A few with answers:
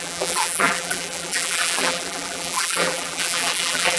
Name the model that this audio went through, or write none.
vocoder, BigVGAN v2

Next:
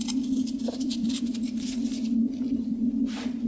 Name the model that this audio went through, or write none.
vocoder, BigVGAN v2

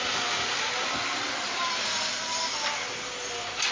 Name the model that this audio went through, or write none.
none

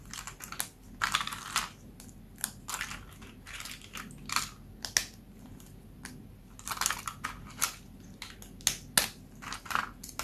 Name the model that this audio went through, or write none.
none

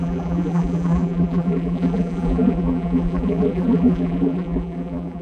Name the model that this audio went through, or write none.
vocoder, BigVGAN v2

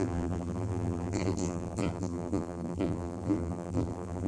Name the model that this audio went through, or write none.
vocoder, BigVGAN v2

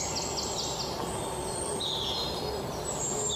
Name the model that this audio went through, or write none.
none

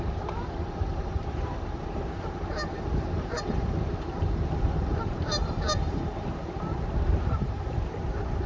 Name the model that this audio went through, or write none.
vocoder, BigVGAN v2